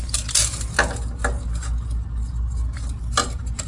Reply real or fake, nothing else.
real